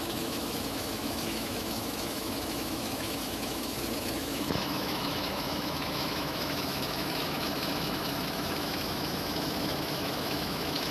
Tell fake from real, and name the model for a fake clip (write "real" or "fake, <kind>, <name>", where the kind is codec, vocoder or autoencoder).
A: fake, autoencoder, DAC-VAE